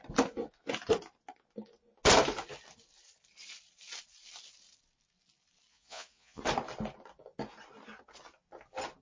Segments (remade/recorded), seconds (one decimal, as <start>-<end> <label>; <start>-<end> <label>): 0.0-5.7 recorded; 5.7-6.4 remade; 6.4-9.0 recorded